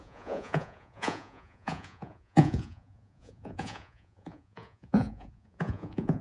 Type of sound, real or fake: fake